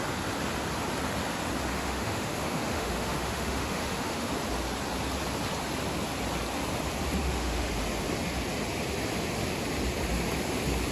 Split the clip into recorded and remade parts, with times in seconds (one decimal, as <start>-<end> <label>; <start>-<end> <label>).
0.0-1.7 recorded; 1.7-4.3 remade; 4.3-7.2 recorded; 7.2-7.7 remade; 7.7-10.9 recorded